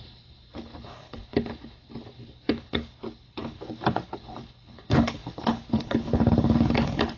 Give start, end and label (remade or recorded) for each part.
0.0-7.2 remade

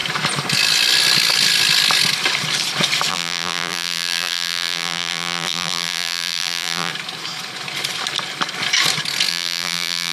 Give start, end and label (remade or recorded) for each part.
0.0-3.1 recorded; 3.1-6.9 remade; 6.9-9.3 recorded; 9.3-10.1 remade

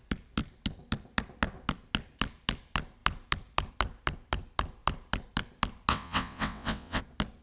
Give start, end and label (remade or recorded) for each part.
0.0-5.9 recorded; 5.9-7.0 remade; 7.0-7.4 recorded

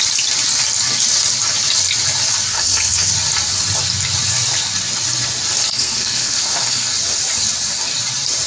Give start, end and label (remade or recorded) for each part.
0.0-2.5 recorded; 2.5-3.1 remade; 3.1-5.5 recorded; 5.5-6.9 remade; 6.9-8.5 recorded

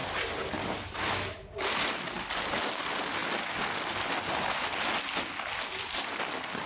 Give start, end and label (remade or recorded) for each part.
0.0-6.7 recorded